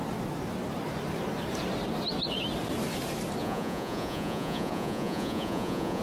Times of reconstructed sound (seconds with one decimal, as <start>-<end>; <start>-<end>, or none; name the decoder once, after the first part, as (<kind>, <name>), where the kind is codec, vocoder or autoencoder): 3.4-6.0 (vocoder, Vocos)